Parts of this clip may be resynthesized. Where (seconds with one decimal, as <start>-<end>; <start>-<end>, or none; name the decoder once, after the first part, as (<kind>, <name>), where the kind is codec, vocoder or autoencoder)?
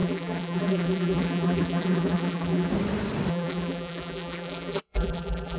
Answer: 0.0-2.7 (vocoder, BigVGAN v2); 3.3-5.6